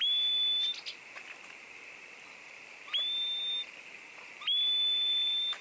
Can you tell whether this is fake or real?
real